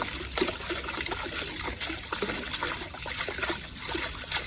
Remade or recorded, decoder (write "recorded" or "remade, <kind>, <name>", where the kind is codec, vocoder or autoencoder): recorded